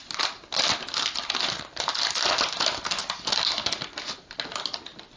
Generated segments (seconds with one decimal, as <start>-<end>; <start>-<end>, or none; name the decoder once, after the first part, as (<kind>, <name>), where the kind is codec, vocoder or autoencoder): none